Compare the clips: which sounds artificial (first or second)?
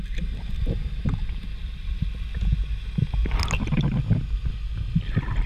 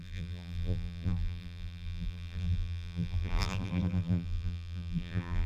second